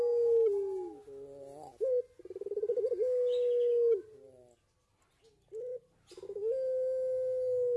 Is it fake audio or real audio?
real